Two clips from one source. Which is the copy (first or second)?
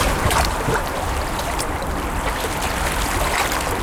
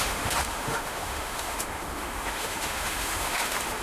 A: second